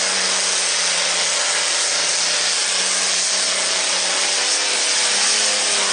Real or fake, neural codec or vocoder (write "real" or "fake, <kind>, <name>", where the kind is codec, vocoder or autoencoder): real